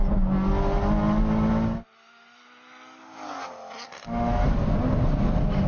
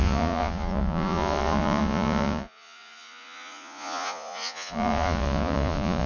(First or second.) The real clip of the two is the first